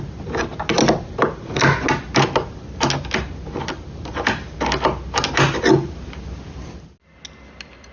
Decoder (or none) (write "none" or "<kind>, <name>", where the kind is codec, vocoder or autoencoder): none